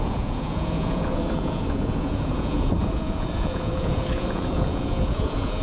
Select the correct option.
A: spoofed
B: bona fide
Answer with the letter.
A